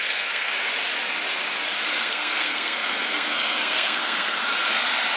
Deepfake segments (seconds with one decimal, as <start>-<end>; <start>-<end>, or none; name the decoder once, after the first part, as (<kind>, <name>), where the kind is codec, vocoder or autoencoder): 0.0-0.5 (codec, SNAC); 2.0-4.4